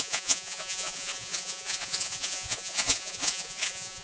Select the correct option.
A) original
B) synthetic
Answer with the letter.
B